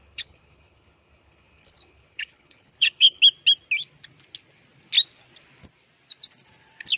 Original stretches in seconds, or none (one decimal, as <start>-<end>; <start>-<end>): 3.2-7.0